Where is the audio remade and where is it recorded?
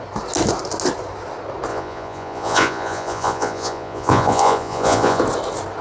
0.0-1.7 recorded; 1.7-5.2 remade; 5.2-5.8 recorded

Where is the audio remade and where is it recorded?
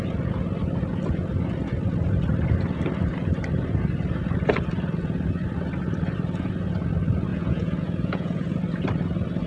0.0-7.3 recorded; 7.3-8.6 remade; 8.6-9.5 recorded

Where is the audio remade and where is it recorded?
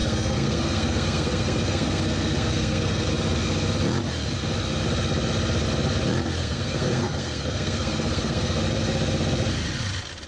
0.0-3.1 remade; 3.1-6.4 recorded; 6.4-8.6 remade; 8.6-10.3 recorded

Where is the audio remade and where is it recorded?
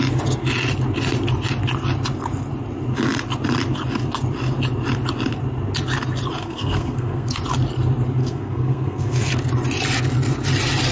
0.0-6.4 recorded; 6.4-7.4 remade; 7.4-8.2 recorded; 8.2-9.3 remade; 9.3-10.9 recorded